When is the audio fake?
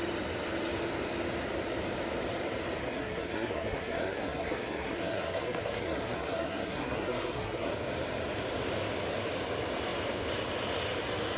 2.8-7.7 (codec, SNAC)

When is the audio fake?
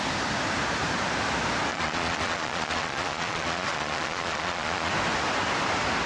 1.7-4.9 (vocoder, Vocos)